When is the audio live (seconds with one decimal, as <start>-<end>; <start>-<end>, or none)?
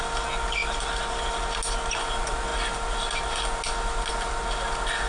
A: 0.0-5.1